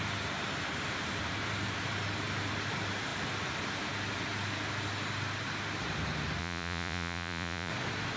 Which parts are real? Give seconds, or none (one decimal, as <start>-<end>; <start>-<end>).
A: 0.0-6.4; 7.7-8.2